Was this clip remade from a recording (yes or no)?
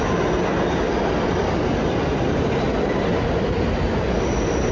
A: no